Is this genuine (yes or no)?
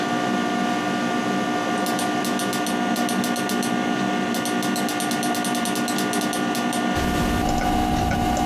yes